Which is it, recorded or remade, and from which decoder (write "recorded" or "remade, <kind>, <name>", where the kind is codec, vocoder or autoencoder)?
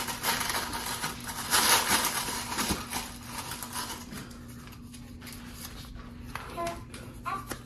recorded